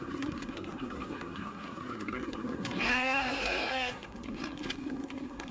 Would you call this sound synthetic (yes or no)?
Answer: yes